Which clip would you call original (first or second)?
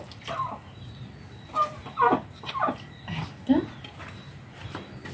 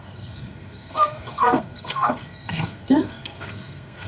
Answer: first